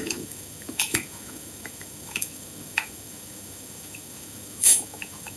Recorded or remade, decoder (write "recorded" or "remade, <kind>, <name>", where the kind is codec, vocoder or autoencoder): remade, autoencoder, DAC-VAE